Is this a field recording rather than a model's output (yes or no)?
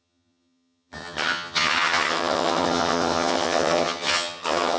no